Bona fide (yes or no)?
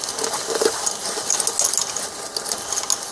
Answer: yes